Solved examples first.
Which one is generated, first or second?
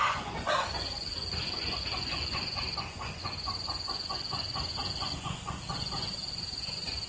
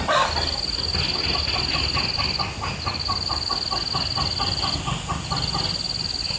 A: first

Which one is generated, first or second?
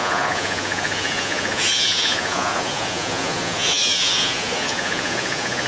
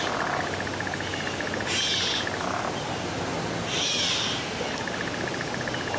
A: first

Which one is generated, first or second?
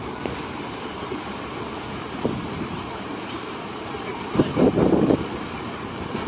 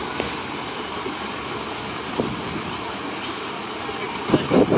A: first